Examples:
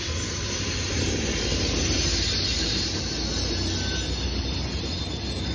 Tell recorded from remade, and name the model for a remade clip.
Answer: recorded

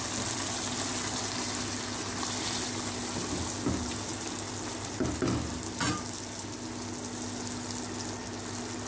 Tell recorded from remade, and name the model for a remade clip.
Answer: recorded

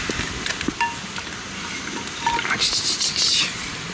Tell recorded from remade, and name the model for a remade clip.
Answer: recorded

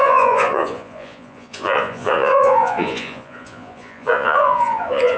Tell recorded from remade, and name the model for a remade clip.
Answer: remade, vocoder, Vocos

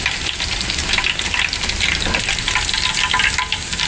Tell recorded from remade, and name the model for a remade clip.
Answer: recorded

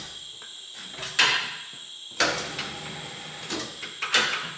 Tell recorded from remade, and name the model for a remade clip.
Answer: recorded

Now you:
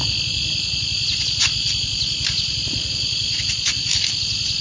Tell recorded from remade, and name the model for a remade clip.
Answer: recorded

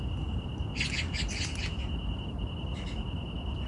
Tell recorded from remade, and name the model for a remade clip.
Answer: recorded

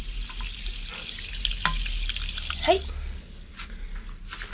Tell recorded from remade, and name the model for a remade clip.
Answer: recorded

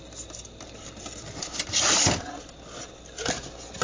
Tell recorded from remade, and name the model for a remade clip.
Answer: recorded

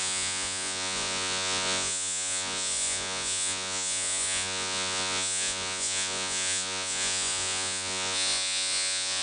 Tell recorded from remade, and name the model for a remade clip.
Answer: remade, vocoder, Vocos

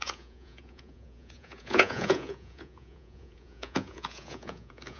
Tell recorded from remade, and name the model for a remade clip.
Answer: remade, vocoder, Vocos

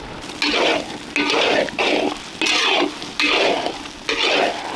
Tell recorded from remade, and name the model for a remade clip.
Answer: recorded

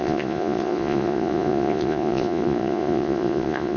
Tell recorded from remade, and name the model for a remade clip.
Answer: remade, vocoder, Vocos